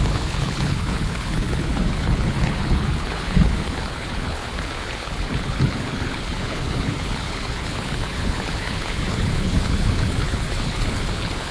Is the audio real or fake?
fake